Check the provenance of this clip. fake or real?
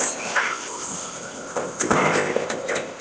fake